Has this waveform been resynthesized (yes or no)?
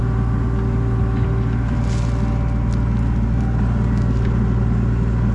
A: no